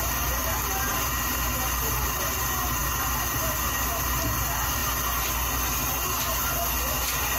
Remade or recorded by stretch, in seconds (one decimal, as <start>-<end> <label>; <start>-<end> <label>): 0.0-7.4 recorded